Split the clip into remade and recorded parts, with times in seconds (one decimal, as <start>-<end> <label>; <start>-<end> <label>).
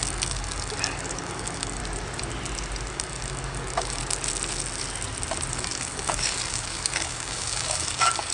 0.0-1.8 remade; 1.8-2.9 recorded; 2.9-4.0 remade; 4.0-5.5 recorded; 5.5-8.3 remade